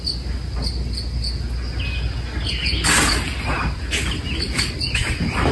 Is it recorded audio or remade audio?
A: recorded